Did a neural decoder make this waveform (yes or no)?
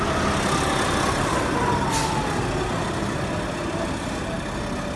no